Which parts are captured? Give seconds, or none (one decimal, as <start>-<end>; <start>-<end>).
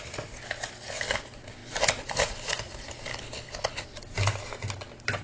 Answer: 0.0-3.1; 3.8-5.2